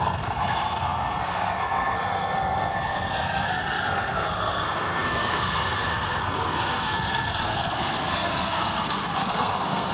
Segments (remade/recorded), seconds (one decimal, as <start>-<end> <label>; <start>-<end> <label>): 0.0-9.9 remade